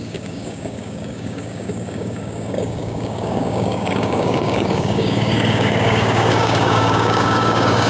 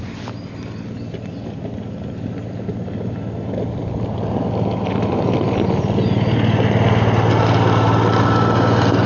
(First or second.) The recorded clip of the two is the second